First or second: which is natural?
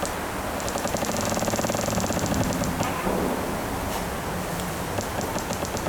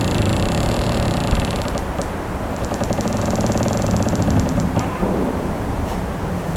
first